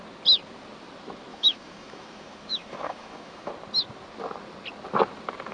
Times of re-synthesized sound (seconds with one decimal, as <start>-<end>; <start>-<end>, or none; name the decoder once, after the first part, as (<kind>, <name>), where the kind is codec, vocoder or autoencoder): 1.3-3.5 (autoencoder, DAC-VAE)